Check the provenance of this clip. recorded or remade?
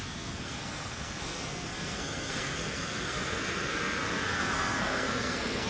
remade